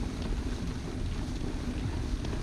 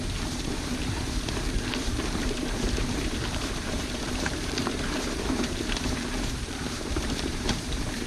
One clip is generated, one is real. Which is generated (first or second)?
second